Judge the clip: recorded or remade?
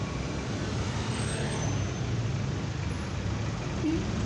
recorded